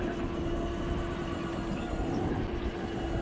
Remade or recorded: recorded